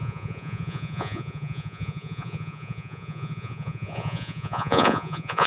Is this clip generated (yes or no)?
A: yes